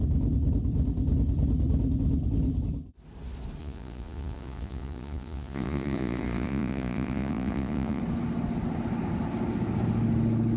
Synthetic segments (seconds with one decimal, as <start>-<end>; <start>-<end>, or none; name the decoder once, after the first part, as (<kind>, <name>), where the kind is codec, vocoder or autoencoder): 3.6-8.0 (vocoder, Vocos)